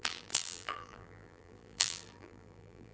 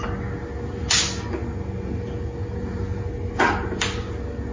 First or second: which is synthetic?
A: first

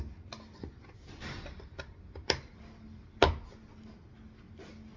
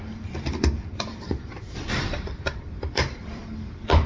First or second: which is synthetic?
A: second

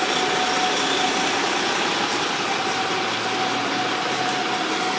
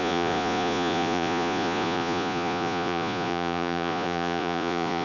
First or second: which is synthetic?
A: second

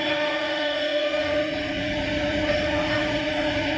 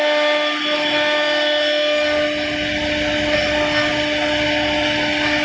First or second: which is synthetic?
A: first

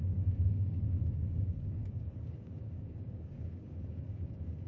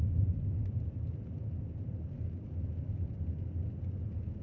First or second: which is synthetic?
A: first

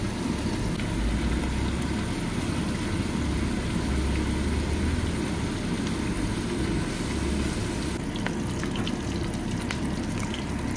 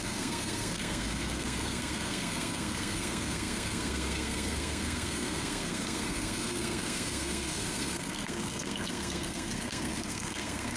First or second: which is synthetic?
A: second